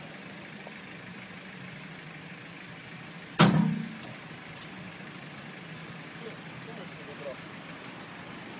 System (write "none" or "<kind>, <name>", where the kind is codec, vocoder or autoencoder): vocoder, BigVGAN v2